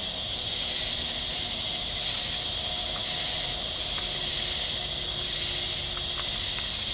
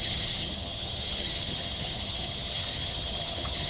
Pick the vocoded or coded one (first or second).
second